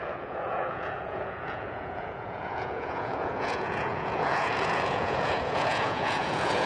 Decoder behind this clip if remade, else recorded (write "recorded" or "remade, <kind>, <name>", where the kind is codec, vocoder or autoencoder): remade, vocoder, Vocos